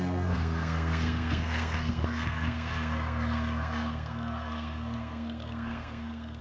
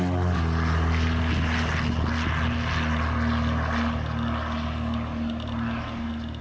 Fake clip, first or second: first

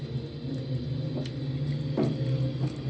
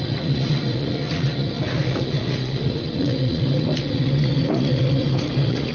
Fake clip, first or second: second